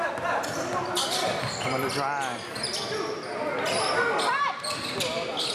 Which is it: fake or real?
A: real